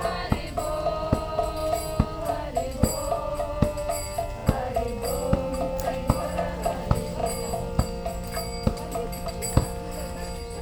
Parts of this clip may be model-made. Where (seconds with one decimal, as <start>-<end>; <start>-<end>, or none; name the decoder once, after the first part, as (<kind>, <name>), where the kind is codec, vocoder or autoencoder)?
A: none